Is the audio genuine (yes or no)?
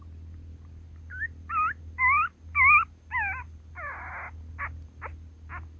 yes